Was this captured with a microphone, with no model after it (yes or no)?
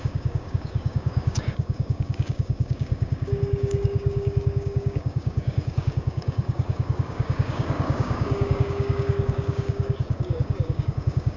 no